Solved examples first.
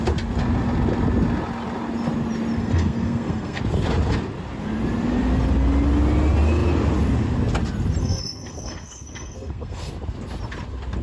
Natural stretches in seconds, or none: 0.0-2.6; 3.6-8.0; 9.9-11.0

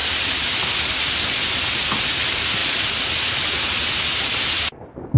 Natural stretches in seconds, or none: 0.0-5.2

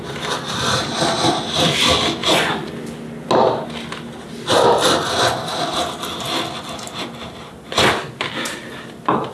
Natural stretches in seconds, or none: 0.0-2.2; 2.7-9.3

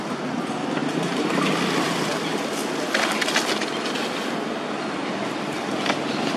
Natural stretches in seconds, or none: 0.0-0.8; 1.5-6.4

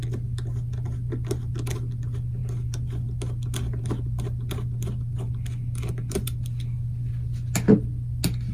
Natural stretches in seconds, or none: 0.0-8.5

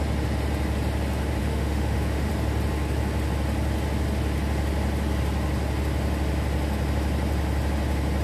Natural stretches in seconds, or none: 0.0-1.4; 2.3-8.2

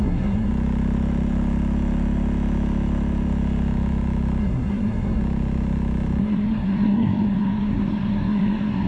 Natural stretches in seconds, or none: 0.5-4.4; 5.2-6.2

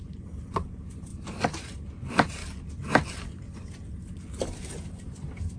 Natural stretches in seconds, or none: 1.1-1.6; 2.4-4.4